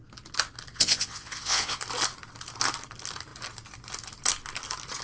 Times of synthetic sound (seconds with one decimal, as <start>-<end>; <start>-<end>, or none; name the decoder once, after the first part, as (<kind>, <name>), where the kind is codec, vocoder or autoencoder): 0.7-1.8 (vocoder, WaveNeXt)